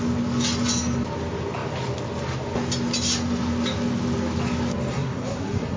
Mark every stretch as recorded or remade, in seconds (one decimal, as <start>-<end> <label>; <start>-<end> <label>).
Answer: 0.0-4.9 recorded; 4.9-5.8 remade